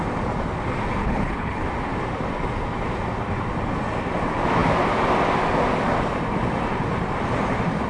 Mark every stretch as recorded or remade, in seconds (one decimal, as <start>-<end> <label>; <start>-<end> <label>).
0.0-1.0 recorded; 1.0-1.7 remade; 1.7-7.9 recorded